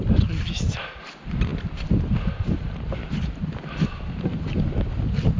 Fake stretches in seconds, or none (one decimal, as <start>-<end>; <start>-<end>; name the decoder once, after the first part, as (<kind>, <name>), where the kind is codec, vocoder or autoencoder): none